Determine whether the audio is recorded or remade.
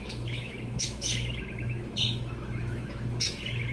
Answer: remade